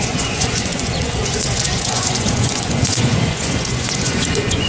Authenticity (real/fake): fake